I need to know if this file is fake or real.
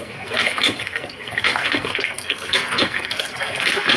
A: fake